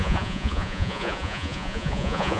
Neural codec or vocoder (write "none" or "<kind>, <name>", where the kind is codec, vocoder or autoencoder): vocoder, Vocos